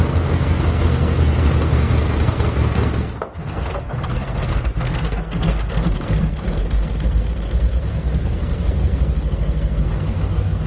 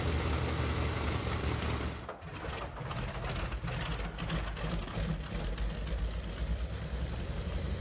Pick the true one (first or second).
second